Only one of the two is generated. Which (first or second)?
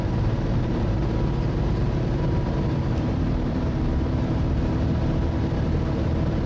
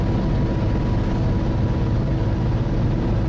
first